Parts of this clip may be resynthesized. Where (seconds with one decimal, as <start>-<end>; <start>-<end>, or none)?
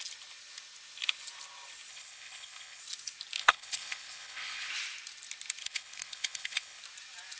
1.9-2.8; 3.4-4.7; 5.6-6.8